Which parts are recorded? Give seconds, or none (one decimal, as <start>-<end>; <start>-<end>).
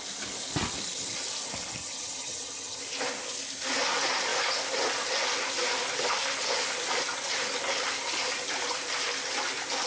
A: 0.0-1.8; 2.8-9.9